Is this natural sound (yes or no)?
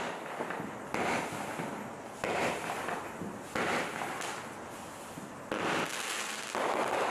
yes